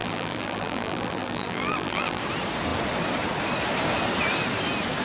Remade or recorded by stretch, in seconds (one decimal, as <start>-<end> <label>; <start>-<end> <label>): 0.0-2.2 remade; 2.2-5.0 recorded